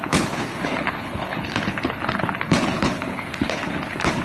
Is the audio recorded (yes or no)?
no